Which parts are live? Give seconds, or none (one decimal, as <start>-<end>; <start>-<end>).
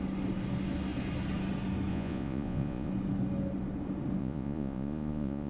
0.0-1.9; 2.9-4.2